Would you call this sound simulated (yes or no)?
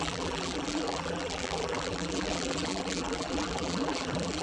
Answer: yes